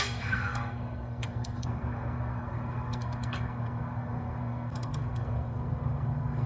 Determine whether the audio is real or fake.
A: fake